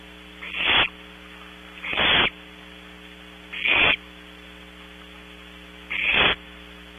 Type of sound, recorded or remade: recorded